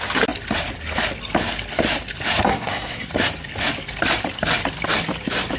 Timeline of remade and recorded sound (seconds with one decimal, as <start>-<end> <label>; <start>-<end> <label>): 0.0-2.5 recorded; 2.5-3.1 remade; 3.1-5.6 recorded